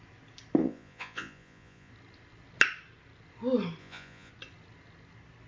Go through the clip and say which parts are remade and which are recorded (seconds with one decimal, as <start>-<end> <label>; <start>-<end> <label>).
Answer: 0.0-0.6 recorded; 0.6-1.9 remade; 1.9-3.8 recorded; 3.8-4.3 remade; 4.3-5.5 recorded